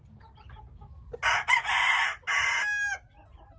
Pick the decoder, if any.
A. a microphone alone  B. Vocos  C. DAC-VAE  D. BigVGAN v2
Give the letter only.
A